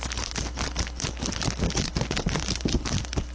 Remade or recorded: recorded